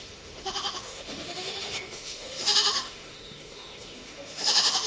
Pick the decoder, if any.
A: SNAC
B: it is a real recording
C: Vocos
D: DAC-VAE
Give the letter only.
D